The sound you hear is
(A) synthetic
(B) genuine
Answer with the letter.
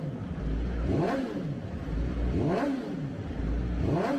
B